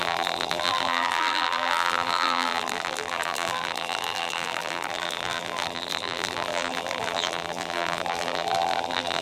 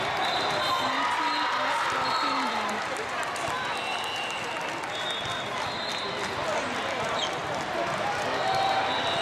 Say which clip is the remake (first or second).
first